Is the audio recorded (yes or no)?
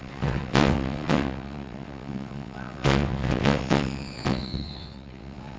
no